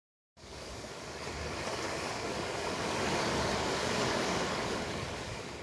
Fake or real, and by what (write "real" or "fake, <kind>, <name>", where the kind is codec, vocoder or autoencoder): fake, codec, DAC